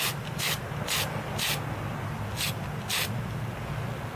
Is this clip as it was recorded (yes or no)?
yes